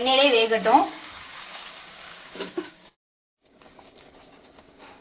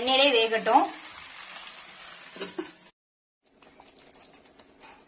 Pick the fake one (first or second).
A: first